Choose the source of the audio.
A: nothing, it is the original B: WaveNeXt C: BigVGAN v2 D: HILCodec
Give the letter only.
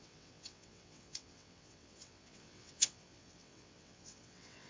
B